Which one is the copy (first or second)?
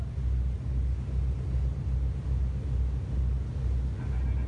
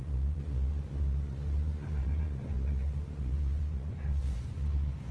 second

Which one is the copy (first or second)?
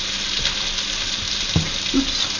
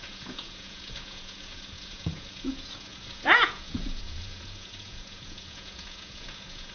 second